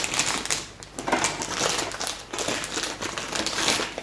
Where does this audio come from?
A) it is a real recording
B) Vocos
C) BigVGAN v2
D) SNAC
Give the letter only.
A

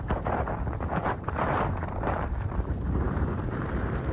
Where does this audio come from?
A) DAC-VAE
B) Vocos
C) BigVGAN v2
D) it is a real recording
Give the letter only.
C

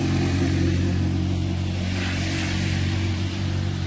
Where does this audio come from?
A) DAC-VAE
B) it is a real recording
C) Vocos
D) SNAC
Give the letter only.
B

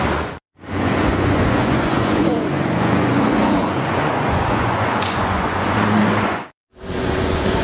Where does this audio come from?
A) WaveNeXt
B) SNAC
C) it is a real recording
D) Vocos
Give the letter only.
D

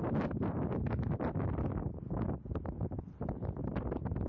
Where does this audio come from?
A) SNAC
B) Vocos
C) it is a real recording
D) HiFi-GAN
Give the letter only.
C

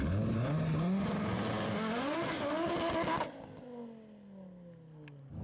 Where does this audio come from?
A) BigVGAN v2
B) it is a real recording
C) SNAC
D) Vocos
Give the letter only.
B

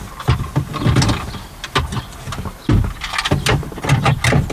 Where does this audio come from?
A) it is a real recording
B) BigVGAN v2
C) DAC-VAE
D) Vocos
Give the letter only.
A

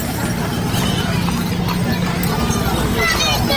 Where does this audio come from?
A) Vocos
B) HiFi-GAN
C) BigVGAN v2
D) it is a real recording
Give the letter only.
D